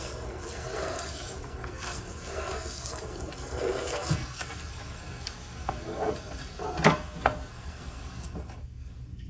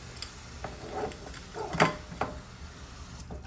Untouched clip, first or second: second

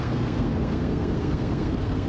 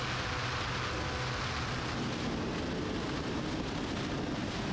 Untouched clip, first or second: second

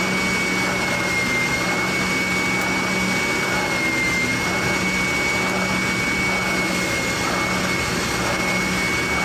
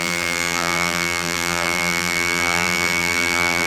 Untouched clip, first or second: first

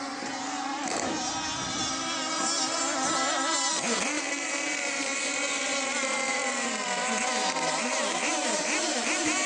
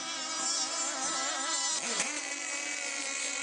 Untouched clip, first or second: second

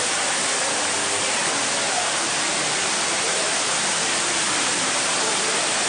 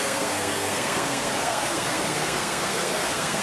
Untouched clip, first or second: first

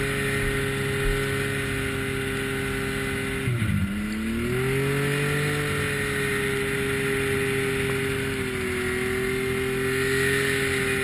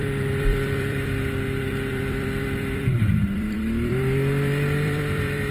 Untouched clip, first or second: first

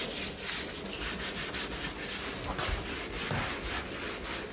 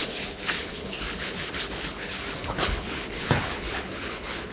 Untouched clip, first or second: first